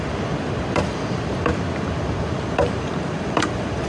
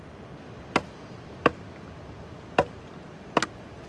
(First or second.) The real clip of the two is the second